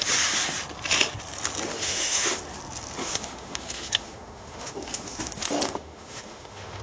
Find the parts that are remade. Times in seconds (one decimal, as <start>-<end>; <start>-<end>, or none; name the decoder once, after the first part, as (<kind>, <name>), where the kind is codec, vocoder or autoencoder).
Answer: 1.7-2.4 (autoencoder, DAC-VAE); 3.0-6.8